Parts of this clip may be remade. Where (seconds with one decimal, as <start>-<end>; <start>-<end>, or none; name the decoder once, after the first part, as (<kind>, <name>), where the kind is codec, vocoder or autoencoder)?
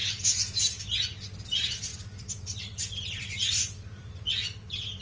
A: 1.9-5.0 (vocoder, BigVGAN v2)